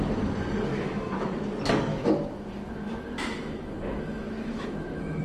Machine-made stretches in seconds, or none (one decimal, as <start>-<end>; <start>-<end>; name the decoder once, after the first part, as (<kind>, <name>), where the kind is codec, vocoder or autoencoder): 0.7-1.3 (autoencoder, DAC-VAE); 1.9-5.2